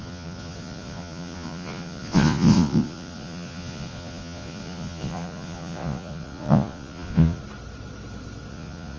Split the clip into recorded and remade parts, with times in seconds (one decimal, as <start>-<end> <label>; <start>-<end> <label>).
0.0-7.4 remade; 7.4-8.5 recorded; 8.5-9.0 remade